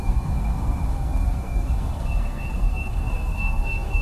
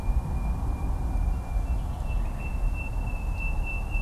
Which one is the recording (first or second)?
second